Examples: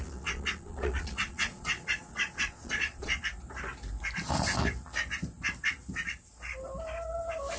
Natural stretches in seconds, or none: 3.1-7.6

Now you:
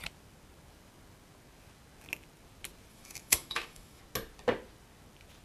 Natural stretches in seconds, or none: 0.0-2.9; 4.0-5.4

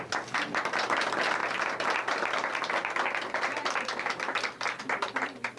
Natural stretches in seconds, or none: 0.0-5.6